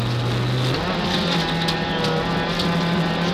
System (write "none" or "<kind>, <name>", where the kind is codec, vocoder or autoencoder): none